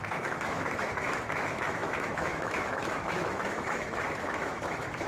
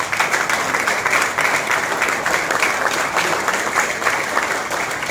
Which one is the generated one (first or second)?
first